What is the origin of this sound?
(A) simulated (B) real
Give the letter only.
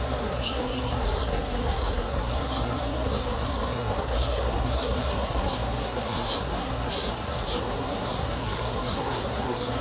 A